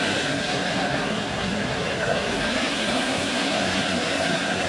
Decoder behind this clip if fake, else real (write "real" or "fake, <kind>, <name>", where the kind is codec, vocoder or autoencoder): fake, codec, SNAC